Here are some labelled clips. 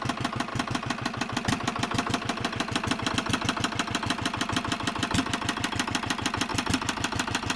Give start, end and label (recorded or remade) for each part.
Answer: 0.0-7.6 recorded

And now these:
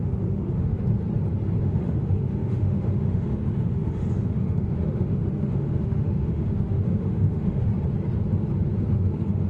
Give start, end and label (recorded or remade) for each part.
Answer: 0.0-0.9 remade; 0.9-1.6 recorded; 1.6-7.7 remade; 7.7-8.9 recorded; 8.9-9.5 remade

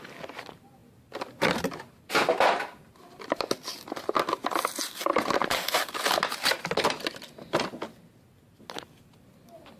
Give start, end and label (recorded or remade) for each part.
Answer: 0.0-5.1 recorded; 5.1-5.9 remade; 5.9-9.8 recorded